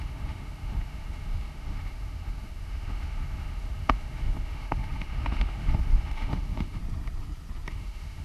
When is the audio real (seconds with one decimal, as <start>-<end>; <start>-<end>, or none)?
6.8-7.7